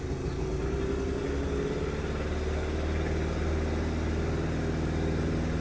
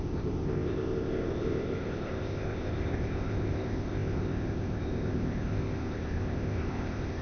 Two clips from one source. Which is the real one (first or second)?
first